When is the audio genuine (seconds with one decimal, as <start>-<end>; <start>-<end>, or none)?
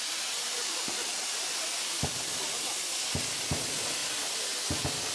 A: 0.0-5.1